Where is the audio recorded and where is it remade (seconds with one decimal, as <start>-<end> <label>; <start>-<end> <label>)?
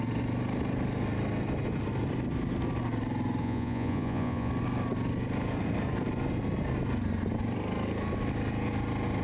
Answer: 0.0-3.4 recorded; 3.4-4.5 remade; 4.5-9.2 recorded